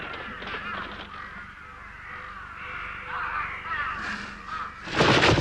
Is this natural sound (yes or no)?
yes